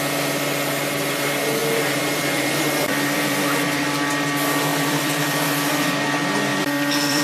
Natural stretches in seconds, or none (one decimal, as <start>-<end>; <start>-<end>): 0.0-1.6; 4.1-4.7; 5.4-6.5